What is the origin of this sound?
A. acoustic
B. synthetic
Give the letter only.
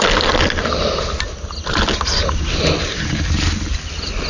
A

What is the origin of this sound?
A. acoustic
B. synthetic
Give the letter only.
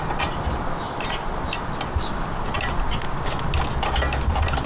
A